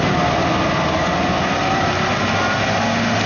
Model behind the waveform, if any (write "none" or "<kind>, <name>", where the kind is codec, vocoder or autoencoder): none